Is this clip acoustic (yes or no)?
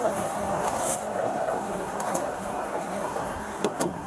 no